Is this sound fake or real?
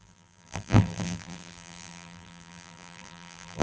fake